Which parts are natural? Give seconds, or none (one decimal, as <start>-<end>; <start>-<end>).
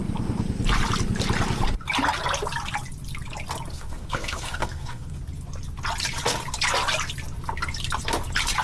0.0-3.7; 5.2-8.6